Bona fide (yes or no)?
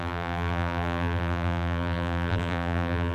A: no